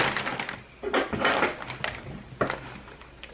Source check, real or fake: real